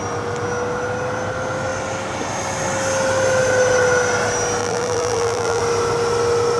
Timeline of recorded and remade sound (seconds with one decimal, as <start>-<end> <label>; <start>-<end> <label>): 0.0-4.6 recorded; 4.6-5.6 remade; 5.6-6.6 recorded